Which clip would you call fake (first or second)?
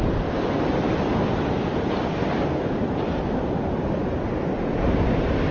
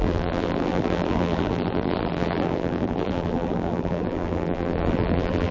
second